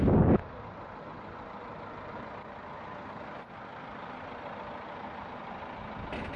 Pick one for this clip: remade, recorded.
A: recorded